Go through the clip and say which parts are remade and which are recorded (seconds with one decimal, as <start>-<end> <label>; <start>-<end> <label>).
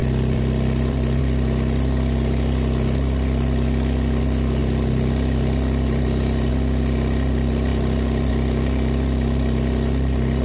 0.0-1.2 remade; 1.2-10.4 recorded